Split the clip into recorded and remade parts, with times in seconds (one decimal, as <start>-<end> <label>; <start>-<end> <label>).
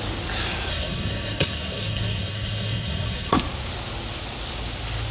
0.0-0.7 recorded; 0.7-3.3 remade; 3.3-5.1 recorded